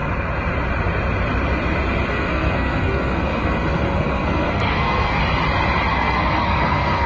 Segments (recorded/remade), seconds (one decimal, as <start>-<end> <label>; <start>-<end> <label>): 0.0-2.1 recorded; 2.1-5.2 remade; 5.2-5.9 recorded; 5.9-7.1 remade